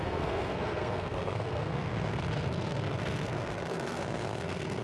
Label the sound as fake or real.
fake